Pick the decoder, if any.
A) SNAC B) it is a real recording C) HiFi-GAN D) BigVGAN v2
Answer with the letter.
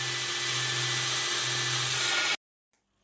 B